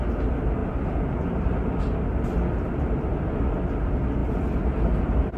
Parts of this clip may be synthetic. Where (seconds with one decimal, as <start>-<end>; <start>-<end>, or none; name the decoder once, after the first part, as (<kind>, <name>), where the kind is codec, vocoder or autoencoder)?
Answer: 3.1-3.7 (vocoder, BigVGAN v2)